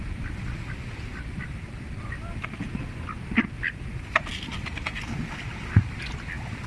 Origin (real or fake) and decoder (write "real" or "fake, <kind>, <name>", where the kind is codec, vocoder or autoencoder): real